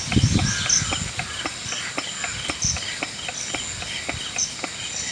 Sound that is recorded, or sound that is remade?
recorded